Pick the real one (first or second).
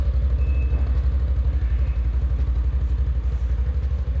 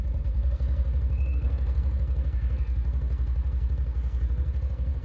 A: first